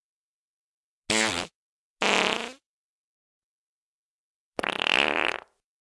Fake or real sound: real